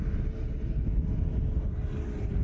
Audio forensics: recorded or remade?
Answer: recorded